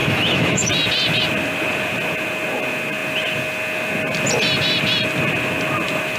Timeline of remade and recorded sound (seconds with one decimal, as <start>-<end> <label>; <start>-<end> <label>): 0.0-0.7 remade; 0.7-6.2 recorded